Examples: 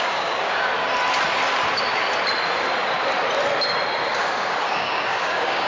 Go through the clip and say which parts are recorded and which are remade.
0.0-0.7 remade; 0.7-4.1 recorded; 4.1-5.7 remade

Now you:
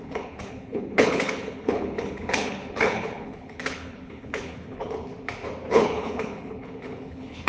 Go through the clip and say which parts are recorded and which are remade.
0.0-5.1 remade; 5.1-5.7 recorded; 5.7-7.5 remade

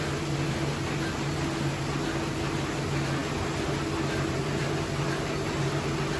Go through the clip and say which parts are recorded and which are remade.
0.0-6.2 recorded

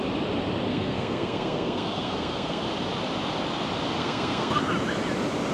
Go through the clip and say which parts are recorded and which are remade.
0.0-0.7 recorded; 0.7-2.6 remade; 2.6-4.0 recorded; 4.0-4.6 remade; 4.6-5.5 recorded